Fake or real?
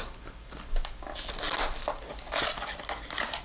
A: real